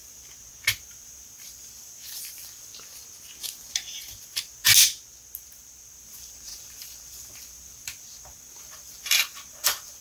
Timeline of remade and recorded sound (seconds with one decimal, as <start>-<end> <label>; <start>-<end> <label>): 0.0-0.8 recorded; 0.8-2.7 remade; 2.7-5.4 recorded; 5.4-10.0 remade